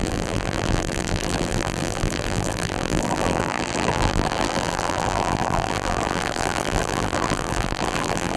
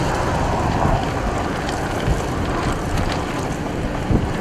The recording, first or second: second